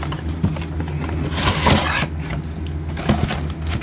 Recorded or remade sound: recorded